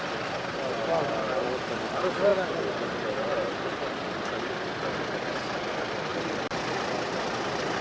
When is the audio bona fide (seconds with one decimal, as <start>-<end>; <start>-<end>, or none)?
0.0-7.8